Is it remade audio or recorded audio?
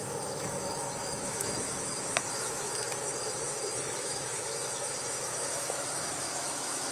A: remade